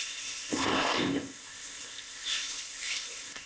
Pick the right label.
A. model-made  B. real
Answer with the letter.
A